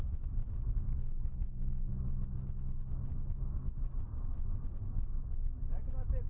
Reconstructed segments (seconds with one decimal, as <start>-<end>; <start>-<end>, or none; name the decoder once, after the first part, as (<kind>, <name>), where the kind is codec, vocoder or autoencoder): 0.9-1.9 (codec, DAC)